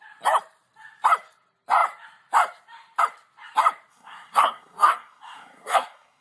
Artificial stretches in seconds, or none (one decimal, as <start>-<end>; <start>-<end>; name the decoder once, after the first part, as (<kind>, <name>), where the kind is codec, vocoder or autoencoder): 3.9-6.2 (codec, SNAC)